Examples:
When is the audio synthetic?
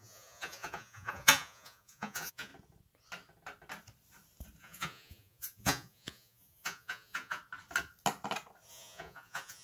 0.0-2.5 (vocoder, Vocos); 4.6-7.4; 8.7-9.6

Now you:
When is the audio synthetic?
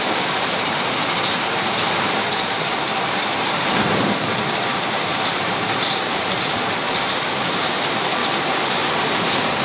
0.0-8.2 (vocoder, BigVGAN v2); 9.0-9.6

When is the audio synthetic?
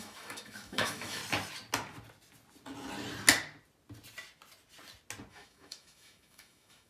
0.0-1.2 (autoencoder, DAC-VAE); 5.3-6.9